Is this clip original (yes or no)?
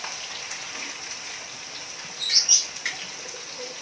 yes